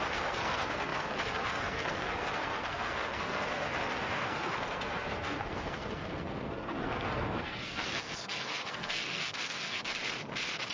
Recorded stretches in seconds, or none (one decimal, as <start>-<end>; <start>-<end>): 10.0-10.7